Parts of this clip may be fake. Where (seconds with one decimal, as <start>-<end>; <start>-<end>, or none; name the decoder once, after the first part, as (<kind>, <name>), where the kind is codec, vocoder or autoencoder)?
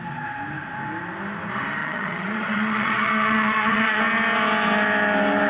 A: 1.8-4.0 (vocoder, Vocos)